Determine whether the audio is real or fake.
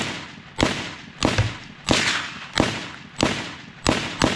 real